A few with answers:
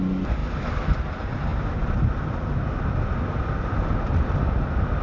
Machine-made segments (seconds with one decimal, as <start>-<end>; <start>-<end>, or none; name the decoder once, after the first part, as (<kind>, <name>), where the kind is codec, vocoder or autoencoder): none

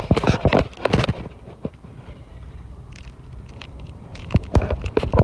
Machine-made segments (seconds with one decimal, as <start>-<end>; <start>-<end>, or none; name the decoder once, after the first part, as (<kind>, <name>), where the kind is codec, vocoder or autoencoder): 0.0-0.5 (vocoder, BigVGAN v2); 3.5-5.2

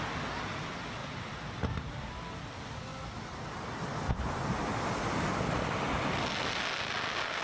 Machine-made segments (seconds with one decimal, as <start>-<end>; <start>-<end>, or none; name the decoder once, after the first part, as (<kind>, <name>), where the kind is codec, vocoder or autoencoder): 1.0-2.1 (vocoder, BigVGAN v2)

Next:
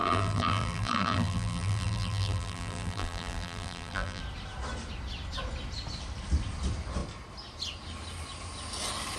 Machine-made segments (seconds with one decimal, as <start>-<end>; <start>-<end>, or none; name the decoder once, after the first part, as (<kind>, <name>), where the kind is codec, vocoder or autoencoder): 0.0-4.2 (vocoder, BigVGAN v2)

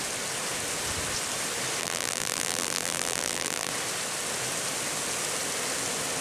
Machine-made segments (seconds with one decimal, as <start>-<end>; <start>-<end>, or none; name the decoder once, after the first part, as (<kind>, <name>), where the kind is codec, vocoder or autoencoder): 1.8-3.7 (vocoder, BigVGAN v2)